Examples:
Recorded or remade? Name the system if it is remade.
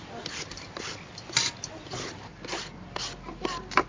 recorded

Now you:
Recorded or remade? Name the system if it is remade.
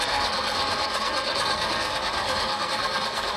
remade, codec, SNAC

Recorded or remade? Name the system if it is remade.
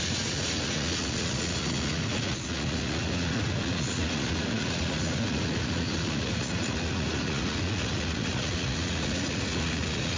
remade, vocoder, Vocos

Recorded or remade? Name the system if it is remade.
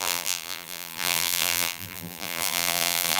remade, vocoder, BigVGAN v2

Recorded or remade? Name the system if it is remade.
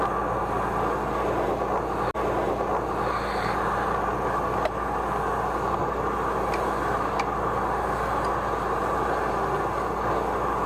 recorded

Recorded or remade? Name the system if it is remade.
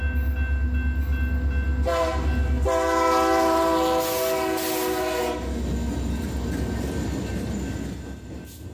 recorded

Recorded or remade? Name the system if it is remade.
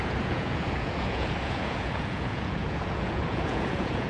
remade, vocoder, Vocos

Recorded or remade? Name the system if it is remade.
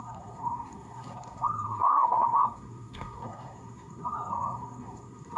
remade, codec, SNAC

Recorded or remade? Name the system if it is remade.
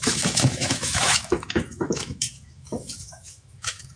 remade, autoencoder, DAC-VAE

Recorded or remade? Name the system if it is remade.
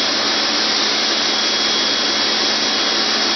recorded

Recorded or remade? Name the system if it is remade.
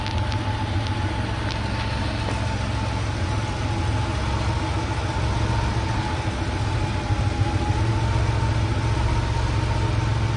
recorded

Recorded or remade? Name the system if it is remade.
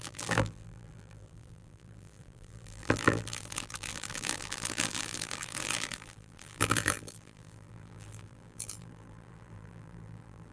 remade, vocoder, BigVGAN v2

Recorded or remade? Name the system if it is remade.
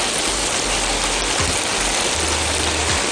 recorded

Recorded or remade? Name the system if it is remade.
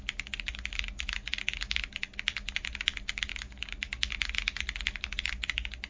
recorded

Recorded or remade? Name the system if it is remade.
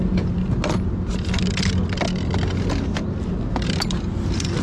recorded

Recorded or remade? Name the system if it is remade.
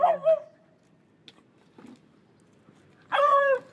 recorded